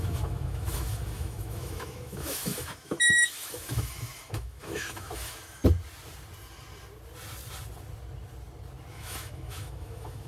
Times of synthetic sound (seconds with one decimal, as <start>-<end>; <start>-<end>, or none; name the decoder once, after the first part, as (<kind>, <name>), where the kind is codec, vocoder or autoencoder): 0.0-5.6 (autoencoder, DAC-VAE); 8.9-10.3